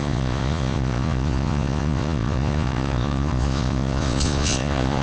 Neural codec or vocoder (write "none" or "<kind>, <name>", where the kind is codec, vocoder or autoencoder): vocoder, Vocos